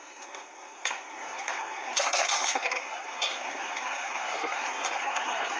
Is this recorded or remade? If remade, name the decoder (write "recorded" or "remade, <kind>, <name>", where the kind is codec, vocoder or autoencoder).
remade, codec, SNAC